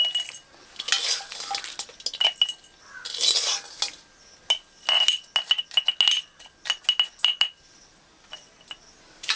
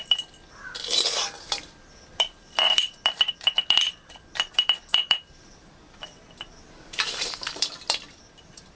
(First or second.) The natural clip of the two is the first